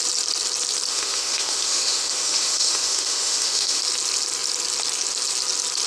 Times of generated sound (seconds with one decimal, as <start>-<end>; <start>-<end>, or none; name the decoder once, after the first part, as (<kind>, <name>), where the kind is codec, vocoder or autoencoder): 0.9-3.8 (autoencoder, DAC-VAE)